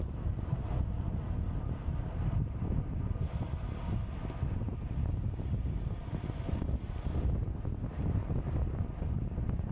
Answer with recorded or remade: recorded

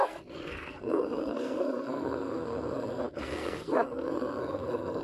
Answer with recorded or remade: remade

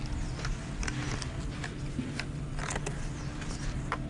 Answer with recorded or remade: recorded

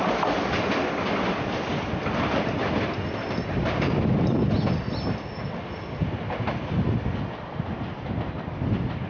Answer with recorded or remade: recorded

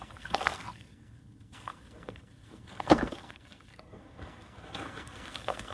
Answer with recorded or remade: remade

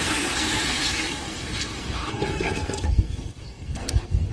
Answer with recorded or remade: remade